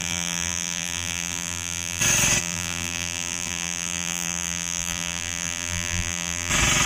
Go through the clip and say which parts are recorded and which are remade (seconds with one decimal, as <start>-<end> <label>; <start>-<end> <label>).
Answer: 0.0-2.0 remade; 2.0-2.4 recorded; 2.4-6.5 remade; 6.5-6.9 recorded